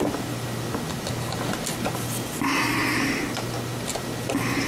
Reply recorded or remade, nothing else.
recorded